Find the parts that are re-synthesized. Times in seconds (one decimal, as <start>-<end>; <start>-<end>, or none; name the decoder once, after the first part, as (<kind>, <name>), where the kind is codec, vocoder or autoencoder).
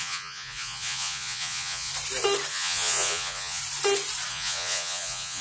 0.0-1.9 (vocoder, Vocos); 2.5-3.6; 4.3-5.4